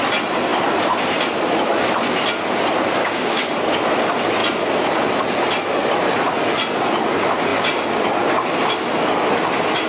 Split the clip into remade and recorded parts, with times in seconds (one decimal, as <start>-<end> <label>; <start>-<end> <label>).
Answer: 0.0-3.0 recorded; 3.0-3.5 remade; 3.5-9.9 recorded